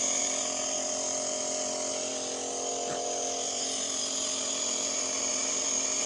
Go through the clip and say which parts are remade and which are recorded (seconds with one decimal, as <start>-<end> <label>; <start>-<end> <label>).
0.0-6.1 recorded